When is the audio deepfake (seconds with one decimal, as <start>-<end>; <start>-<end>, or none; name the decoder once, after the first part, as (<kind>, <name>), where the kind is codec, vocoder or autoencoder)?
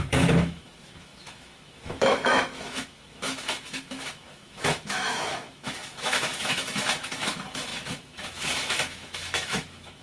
0.0-10.0 (autoencoder, DAC-VAE)